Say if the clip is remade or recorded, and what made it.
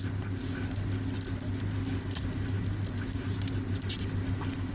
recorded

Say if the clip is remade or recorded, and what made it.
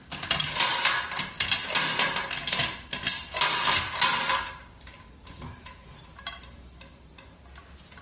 recorded